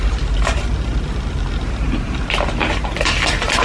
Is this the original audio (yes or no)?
yes